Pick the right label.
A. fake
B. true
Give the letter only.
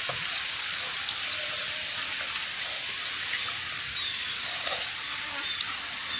B